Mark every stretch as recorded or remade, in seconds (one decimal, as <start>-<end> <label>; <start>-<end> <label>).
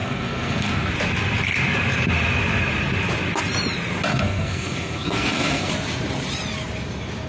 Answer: 0.0-0.9 remade; 0.9-4.1 recorded; 4.1-5.7 remade; 5.7-7.3 recorded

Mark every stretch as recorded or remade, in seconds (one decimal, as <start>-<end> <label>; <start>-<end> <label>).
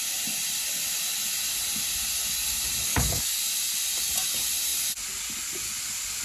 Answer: 0.0-2.9 recorded; 2.9-3.4 remade; 3.4-6.2 recorded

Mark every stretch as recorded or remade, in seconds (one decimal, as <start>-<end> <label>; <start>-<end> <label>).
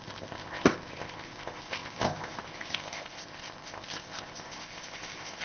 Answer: 0.0-5.4 remade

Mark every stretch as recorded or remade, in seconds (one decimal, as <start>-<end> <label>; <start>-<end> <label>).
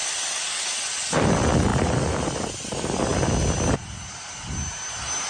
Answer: 0.0-5.3 recorded